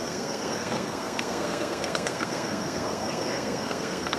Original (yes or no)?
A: no